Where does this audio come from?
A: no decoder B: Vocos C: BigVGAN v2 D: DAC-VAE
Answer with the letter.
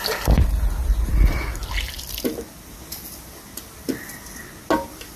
A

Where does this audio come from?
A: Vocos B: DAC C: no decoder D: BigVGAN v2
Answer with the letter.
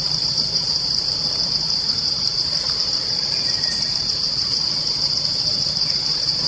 D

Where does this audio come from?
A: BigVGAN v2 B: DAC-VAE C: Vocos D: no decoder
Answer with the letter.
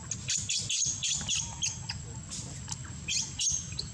D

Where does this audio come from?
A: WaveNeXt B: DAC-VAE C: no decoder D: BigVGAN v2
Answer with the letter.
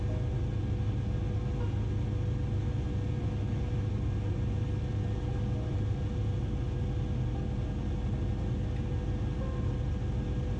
C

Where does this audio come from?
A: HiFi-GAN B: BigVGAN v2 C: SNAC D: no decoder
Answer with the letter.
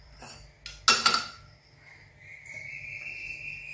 D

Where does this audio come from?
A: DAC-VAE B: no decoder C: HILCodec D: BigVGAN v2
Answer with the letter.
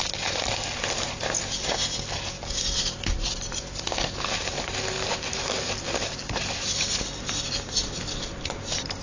B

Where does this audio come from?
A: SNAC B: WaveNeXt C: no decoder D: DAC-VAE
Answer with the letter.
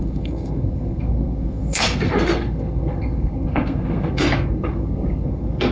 A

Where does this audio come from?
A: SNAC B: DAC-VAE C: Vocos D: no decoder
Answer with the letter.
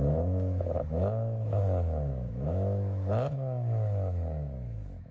B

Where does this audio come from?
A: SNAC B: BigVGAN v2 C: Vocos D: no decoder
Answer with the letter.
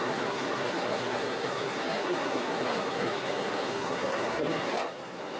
A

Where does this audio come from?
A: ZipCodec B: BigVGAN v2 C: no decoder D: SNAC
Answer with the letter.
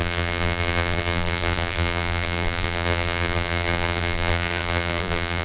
B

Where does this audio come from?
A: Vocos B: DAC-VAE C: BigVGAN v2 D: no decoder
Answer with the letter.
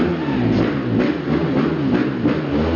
D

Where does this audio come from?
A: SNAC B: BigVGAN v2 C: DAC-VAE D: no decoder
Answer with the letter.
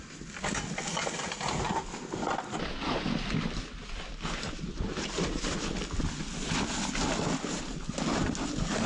D